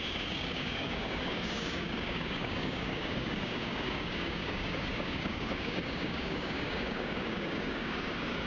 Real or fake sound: fake